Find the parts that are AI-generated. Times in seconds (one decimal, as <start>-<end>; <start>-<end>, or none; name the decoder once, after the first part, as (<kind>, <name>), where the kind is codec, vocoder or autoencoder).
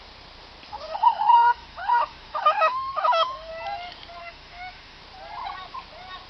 0.9-3.5 (autoencoder, DAC-VAE); 4.2-5.0